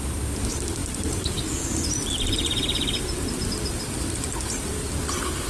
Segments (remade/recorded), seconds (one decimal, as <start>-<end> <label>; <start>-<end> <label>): 0.0-5.5 recorded